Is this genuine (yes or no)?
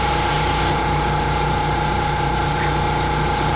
no